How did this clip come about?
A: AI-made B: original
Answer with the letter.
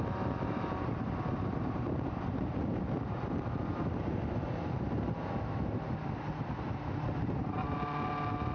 A